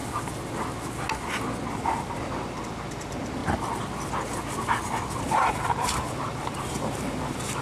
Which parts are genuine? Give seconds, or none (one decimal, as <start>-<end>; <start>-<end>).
0.0-1.7; 3.4-5.2